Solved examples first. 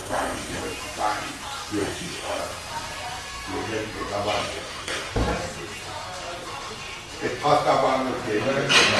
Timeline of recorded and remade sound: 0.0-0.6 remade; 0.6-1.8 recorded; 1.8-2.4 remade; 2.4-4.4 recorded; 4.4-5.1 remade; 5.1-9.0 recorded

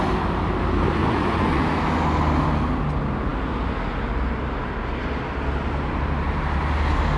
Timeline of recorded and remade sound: 0.0-1.0 recorded; 1.0-1.6 remade; 1.6-7.2 recorded

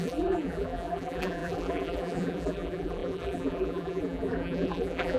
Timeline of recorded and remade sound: 0.0-5.2 remade

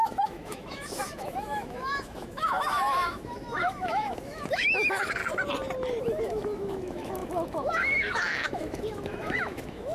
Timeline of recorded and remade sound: 0.0-5.2 remade; 5.2-6.0 recorded; 6.0-9.9 remade

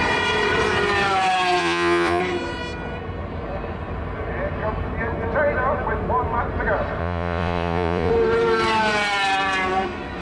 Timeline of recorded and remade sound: 0.0-1.6 recorded; 1.6-2.2 remade; 2.2-7.0 recorded; 7.0-8.1 remade; 8.1-10.2 recorded

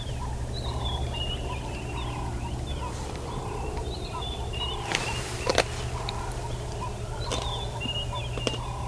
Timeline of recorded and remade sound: 0.0-3.4 recorded; 3.4-5.5 remade; 5.5-8.9 recorded

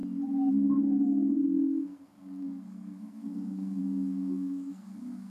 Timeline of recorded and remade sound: 0.0-0.5 recorded; 0.5-5.3 remade